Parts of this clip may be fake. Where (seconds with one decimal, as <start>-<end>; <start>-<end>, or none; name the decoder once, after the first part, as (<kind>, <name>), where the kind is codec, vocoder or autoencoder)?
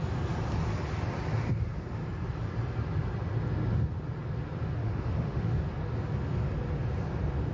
4.8-5.6 (autoencoder, DAC-VAE)